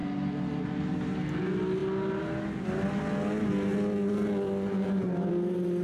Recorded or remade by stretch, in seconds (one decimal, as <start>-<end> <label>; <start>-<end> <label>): 0.0-5.8 recorded